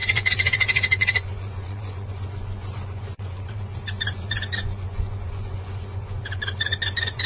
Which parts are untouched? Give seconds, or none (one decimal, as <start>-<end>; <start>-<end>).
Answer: none